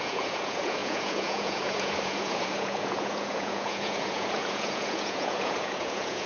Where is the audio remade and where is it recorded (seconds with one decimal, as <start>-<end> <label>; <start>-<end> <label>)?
0.0-6.3 remade